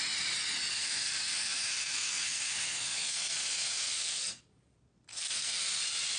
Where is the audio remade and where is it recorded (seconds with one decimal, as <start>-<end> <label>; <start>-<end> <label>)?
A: 0.0-0.7 recorded; 0.7-4.4 remade; 4.4-5.1 recorded; 5.1-5.8 remade; 5.8-6.2 recorded